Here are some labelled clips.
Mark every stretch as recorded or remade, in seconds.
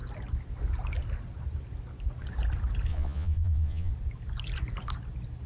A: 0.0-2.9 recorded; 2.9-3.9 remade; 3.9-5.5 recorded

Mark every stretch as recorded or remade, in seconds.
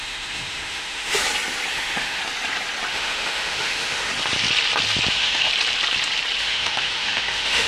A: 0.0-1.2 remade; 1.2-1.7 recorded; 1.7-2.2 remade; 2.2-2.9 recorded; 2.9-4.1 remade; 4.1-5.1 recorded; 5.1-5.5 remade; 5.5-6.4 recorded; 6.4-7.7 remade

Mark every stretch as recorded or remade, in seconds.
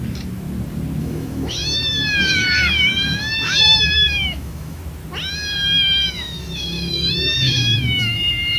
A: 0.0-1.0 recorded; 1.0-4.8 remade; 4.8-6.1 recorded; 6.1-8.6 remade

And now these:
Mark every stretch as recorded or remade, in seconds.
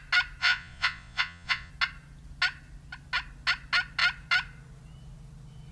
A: 0.0-0.4 recorded; 0.4-1.7 remade; 1.7-5.7 recorded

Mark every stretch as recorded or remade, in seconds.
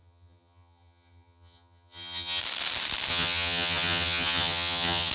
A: 0.0-2.4 remade; 2.4-3.1 recorded; 3.1-5.1 remade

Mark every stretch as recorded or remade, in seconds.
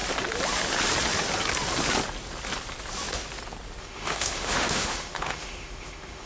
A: 0.0-3.8 recorded; 3.8-6.3 remade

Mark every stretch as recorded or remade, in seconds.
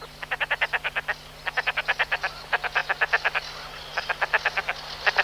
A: 0.0-5.2 recorded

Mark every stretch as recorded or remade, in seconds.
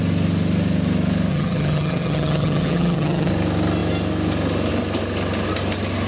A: 0.0-1.3 recorded; 1.3-3.3 remade; 3.3-6.1 recorded